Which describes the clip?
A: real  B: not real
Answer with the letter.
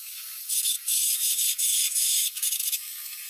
B